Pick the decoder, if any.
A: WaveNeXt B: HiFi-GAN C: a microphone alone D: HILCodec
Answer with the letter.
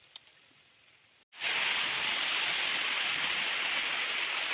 C